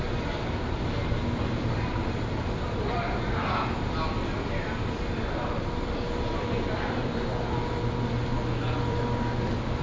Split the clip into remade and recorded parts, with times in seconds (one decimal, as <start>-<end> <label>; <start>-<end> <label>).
0.0-9.8 recorded